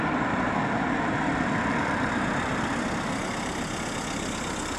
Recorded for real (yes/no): no